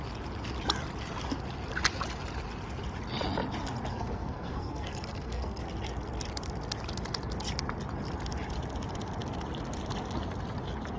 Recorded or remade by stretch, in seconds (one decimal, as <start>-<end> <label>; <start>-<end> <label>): 0.0-3.9 recorded; 3.9-5.6 remade; 5.6-11.0 recorded